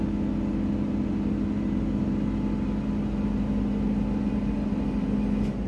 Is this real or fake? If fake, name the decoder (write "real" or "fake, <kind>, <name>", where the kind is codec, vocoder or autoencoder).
real